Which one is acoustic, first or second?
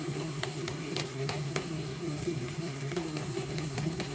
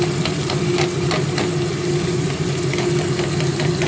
second